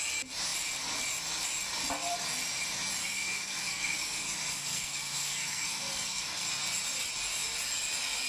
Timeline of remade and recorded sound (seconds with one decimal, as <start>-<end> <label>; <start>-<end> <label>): 0.0-3.0 recorded; 3.0-6.5 remade; 6.5-8.3 recorded